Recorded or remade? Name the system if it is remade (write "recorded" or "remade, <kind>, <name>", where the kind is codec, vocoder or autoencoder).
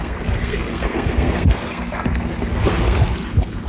remade, codec, SNAC